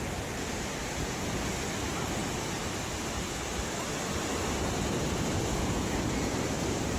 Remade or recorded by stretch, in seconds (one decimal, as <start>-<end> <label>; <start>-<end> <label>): 0.0-0.8 recorded; 0.8-1.5 remade; 1.5-5.5 recorded; 5.5-6.3 remade; 6.3-7.0 recorded